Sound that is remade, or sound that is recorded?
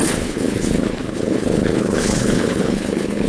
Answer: remade